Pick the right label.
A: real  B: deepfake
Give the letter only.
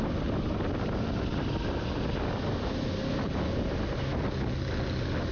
A